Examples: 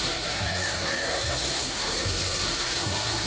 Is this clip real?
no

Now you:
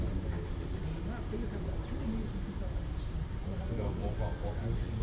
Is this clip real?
yes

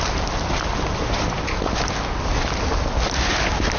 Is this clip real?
yes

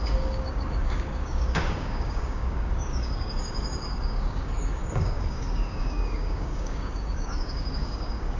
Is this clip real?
no